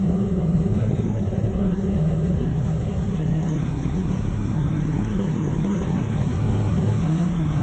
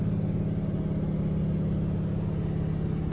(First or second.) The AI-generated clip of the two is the first